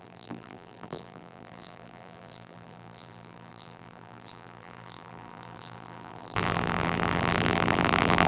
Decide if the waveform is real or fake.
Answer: fake